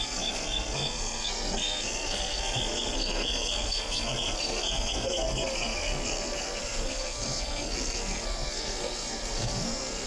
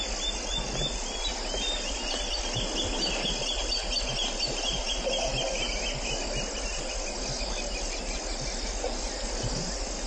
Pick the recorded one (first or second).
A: second